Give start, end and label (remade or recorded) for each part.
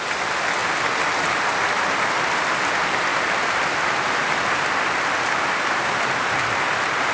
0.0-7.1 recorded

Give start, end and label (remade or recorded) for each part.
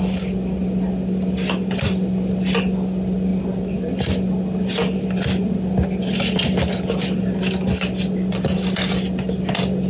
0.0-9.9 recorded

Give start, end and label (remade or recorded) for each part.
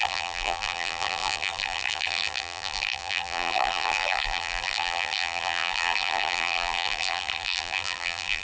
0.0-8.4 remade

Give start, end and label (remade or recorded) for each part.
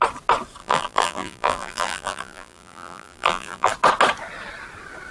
0.0-0.6 recorded; 0.6-3.7 remade; 3.7-5.1 recorded